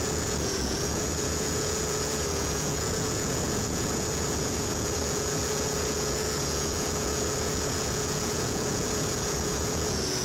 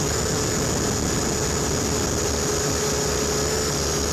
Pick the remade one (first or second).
first